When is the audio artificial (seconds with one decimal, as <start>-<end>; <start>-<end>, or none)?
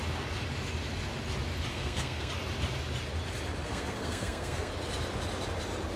1.7-2.3; 3.6-4.7